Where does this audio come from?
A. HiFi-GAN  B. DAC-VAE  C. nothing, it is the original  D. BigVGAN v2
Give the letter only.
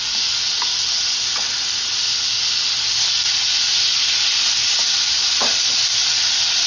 C